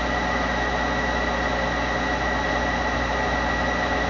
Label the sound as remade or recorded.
recorded